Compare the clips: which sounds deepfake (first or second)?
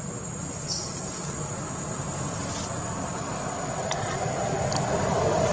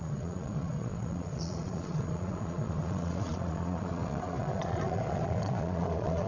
second